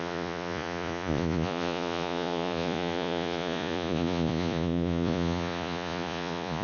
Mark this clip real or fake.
fake